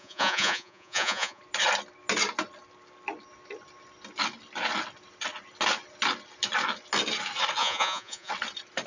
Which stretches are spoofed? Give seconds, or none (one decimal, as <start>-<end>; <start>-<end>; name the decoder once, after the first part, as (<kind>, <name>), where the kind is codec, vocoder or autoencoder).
0.0-1.4 (vocoder, Vocos); 7.6-8.3